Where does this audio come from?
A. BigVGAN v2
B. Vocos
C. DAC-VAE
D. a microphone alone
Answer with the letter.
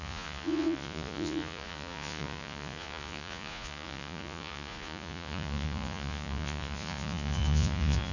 B